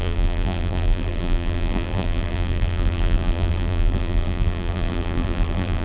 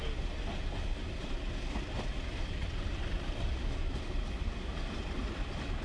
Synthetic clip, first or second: first